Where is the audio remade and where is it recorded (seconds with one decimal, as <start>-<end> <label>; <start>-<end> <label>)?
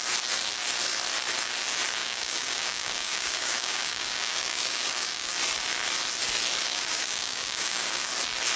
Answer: 0.0-2.0 recorded; 2.0-5.3 remade; 5.3-6.6 recorded; 6.6-8.1 remade; 8.1-8.6 recorded